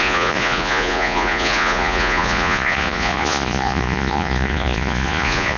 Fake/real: fake